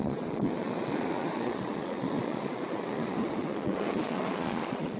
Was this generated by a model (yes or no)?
yes